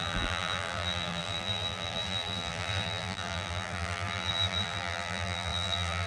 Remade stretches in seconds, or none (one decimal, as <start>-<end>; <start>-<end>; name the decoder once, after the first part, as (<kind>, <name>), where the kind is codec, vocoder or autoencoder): 0.0-6.1 (vocoder, BigVGAN v2)